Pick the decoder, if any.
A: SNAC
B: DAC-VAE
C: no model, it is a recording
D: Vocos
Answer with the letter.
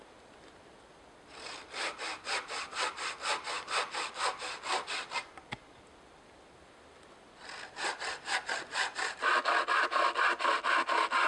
C